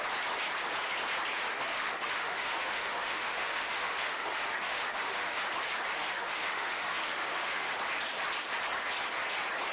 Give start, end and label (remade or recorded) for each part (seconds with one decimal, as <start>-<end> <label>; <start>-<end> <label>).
0.0-1.7 recorded; 1.7-5.5 remade; 5.5-5.9 recorded; 5.9-7.8 remade; 7.8-9.7 recorded